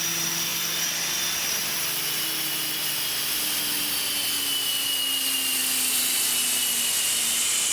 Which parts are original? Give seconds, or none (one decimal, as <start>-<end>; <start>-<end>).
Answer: 0.0-7.7